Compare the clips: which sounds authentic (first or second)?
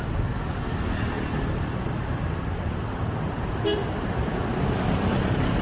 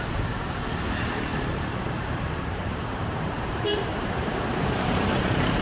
first